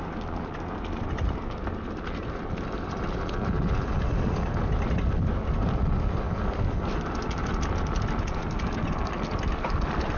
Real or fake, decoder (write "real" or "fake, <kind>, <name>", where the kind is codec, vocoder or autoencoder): real